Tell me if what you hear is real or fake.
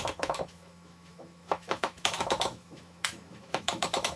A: fake